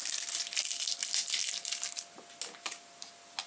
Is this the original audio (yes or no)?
yes